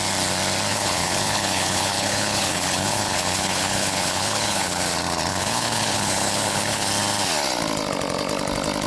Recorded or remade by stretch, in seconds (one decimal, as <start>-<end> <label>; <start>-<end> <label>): 0.0-0.7 recorded; 0.7-4.8 remade; 4.8-5.3 recorded; 5.3-6.9 remade; 6.9-8.9 recorded